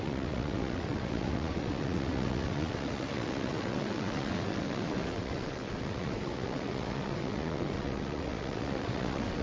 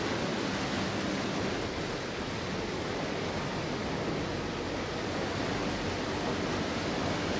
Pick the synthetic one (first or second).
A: first